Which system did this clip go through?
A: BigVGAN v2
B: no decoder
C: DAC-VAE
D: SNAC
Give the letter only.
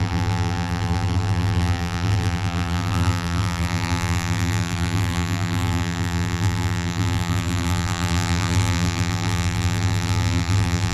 A